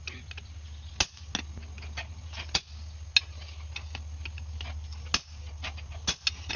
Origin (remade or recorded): recorded